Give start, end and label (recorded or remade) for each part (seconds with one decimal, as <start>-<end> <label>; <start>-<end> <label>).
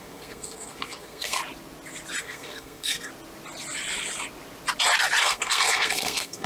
0.0-1.4 remade; 1.4-2.2 recorded; 2.2-3.1 remade; 3.1-5.2 recorded; 5.2-6.5 remade